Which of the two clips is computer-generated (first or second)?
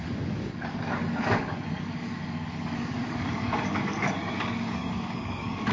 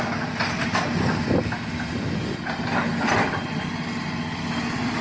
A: first